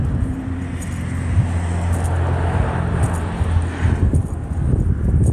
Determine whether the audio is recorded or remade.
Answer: recorded